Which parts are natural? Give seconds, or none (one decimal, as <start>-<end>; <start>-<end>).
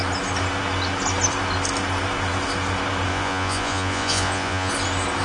0.0-3.1; 4.7-5.2